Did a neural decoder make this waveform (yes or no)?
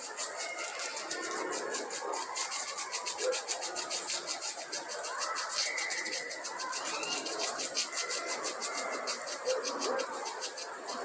no